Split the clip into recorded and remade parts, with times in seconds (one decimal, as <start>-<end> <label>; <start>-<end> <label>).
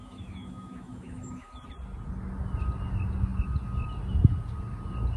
0.0-1.5 remade; 1.5-5.2 recorded